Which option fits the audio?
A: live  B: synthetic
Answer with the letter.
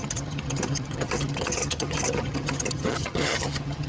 B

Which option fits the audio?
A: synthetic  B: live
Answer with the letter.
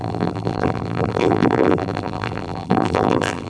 A